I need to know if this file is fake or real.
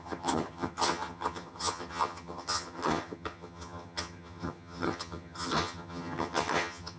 fake